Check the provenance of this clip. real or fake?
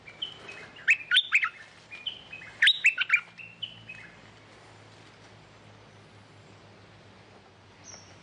real